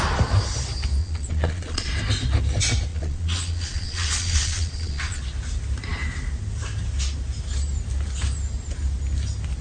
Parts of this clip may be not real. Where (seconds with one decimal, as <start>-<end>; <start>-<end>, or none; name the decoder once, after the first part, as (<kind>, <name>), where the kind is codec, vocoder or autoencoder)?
1.0-1.9 (vocoder, Vocos); 2.9-5.2